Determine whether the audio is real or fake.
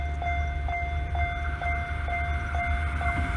real